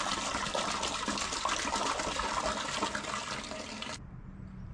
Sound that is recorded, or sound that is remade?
recorded